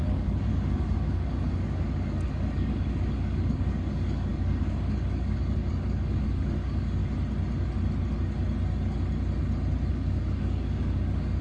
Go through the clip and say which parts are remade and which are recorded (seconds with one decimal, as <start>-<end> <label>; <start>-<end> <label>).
0.0-7.0 remade; 7.0-9.9 recorded; 9.9-11.4 remade